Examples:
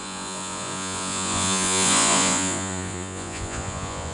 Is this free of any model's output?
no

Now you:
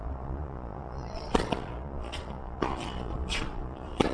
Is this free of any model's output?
no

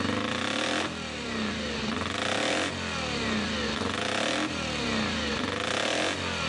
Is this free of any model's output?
yes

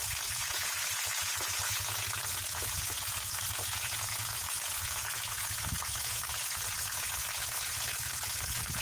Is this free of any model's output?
no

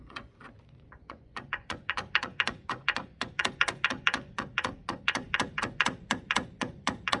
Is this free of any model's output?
no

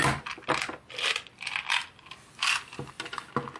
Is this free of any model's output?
yes